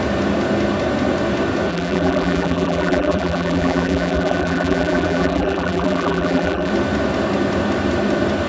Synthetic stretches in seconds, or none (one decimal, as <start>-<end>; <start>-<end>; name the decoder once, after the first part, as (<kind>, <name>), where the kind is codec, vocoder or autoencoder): 1.7-6.7 (vocoder, BigVGAN v2)